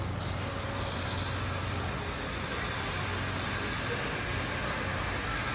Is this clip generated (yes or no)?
no